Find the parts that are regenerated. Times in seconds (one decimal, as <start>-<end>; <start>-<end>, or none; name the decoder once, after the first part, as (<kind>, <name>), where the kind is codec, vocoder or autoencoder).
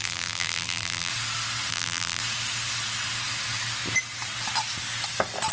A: 0.0-1.1 (vocoder, BigVGAN v2); 1.7-2.2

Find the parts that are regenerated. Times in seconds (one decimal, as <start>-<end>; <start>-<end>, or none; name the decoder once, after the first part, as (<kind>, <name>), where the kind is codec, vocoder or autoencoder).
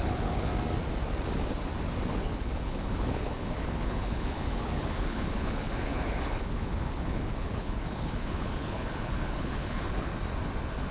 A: 0.0-0.5 (codec, HILCodec); 2.1-10.1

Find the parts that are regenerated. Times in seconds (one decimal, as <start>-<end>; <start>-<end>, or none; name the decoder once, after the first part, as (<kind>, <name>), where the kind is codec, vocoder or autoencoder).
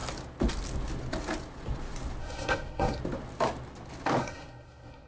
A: 2.2-3.0 (codec, SNAC); 4.2-5.1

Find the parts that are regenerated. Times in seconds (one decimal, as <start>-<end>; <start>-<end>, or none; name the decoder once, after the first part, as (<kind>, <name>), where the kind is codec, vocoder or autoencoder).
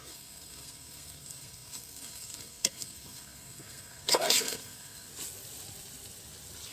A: 0.0-5.1 (codec, SNAC)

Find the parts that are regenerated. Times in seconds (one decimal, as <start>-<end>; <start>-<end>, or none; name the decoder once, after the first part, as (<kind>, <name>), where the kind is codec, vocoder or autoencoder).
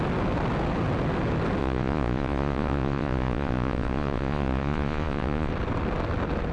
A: 1.6-5.5 (vocoder, Vocos)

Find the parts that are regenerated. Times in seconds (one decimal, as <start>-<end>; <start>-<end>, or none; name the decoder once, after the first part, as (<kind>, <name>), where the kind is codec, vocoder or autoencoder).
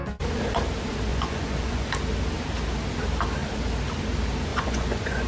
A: 1.1-1.9 (vocoder, Vocos); 4.5-5.3